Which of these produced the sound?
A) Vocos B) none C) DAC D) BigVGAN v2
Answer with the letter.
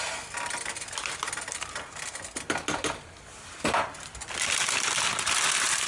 B